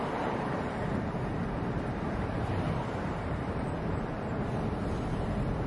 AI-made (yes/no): yes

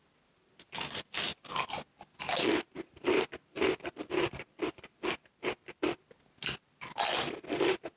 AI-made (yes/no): no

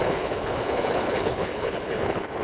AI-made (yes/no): yes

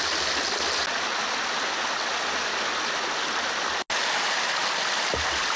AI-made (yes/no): no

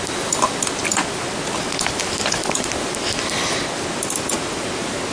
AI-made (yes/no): no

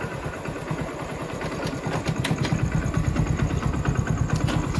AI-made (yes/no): no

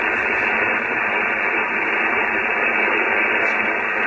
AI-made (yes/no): no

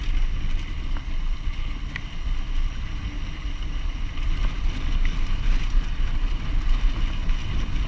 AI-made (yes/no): no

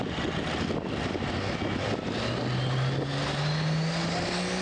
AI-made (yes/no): no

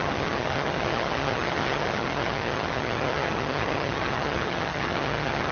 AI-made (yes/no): yes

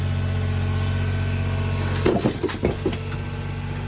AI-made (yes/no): no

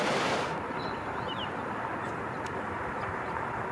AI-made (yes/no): no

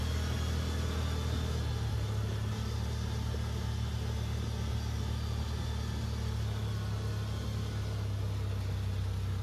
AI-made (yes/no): no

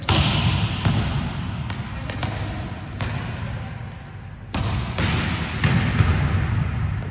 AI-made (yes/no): no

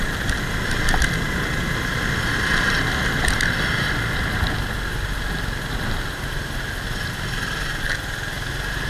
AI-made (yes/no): no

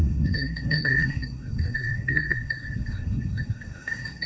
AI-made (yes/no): yes